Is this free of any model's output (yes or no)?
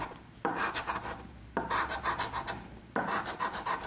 no